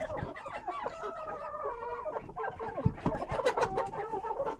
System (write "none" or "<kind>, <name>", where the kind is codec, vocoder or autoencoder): none